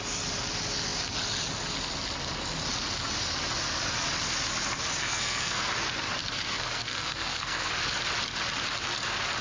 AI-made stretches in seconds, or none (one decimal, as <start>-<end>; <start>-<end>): 5.0-5.7; 6.2-7.7